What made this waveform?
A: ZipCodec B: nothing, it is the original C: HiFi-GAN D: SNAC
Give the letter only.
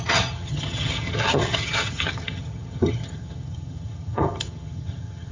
C